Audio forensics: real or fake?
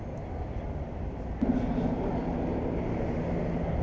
real